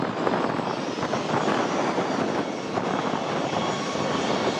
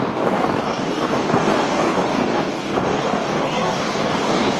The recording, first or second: first